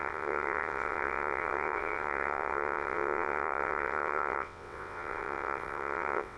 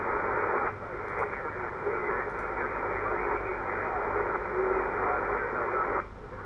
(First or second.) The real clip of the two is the second